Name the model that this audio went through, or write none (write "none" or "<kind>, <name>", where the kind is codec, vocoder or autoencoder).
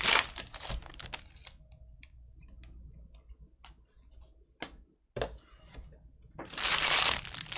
none